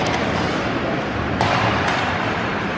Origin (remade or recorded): remade